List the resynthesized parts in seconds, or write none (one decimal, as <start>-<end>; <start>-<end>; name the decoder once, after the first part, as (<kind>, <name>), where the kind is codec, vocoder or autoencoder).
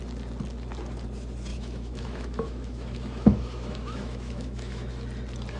1.5-4.9 (autoencoder, DAC-VAE)